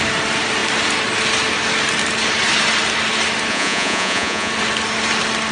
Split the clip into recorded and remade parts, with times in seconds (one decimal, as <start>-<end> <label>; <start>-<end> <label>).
0.0-3.5 recorded; 3.5-4.5 remade; 4.5-5.5 recorded